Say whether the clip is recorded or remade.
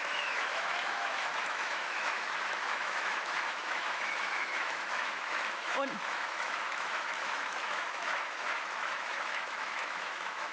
remade